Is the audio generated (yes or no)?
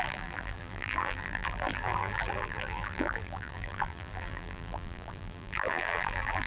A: yes